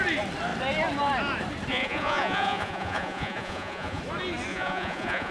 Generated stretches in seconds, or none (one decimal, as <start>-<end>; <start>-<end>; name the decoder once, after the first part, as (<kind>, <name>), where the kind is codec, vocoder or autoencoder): 1.7-4.0 (vocoder, Vocos); 4.5-5.3